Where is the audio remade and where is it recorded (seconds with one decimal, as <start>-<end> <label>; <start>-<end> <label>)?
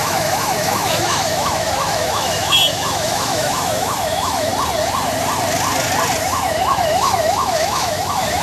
0.0-4.5 remade; 4.5-6.2 recorded; 6.2-8.4 remade